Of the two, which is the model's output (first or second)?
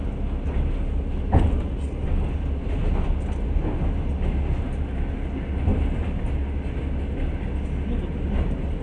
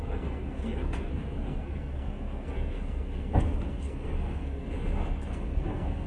second